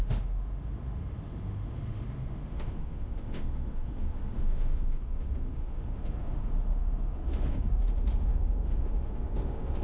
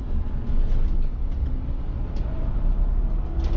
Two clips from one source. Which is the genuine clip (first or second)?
second